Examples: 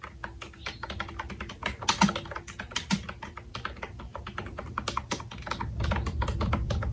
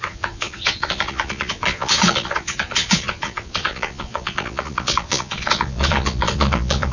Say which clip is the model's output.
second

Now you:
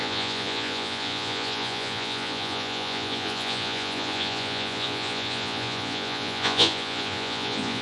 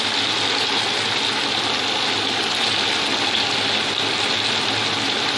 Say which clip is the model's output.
first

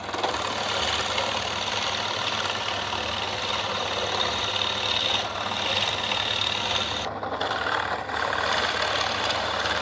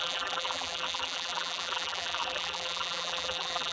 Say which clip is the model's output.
second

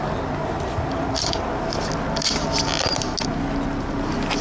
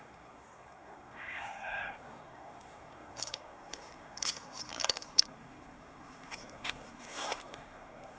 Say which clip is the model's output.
second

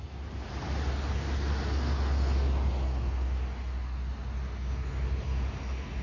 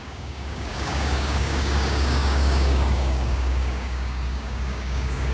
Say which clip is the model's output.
second